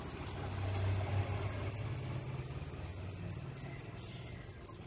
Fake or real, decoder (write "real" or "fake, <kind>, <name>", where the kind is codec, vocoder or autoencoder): real